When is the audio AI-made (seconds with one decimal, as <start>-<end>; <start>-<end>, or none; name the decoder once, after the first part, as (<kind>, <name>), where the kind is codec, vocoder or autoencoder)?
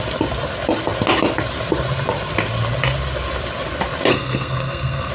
4.1-5.1 (codec, SNAC)